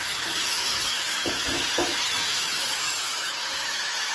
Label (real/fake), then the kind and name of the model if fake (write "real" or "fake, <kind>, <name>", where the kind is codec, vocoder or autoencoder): fake, autoencoder, DAC-VAE